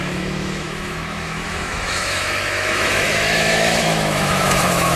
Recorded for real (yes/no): no